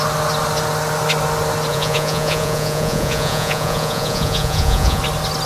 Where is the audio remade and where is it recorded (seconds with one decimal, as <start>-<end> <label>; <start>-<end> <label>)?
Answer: 0.0-1.7 recorded; 1.7-5.0 remade; 5.0-5.5 recorded